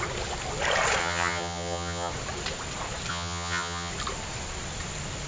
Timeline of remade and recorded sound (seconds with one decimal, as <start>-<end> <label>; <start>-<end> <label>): 0.0-1.0 recorded; 1.0-2.1 remade; 2.1-3.1 recorded; 3.1-3.9 remade; 3.9-5.3 recorded